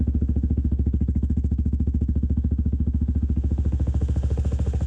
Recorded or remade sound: remade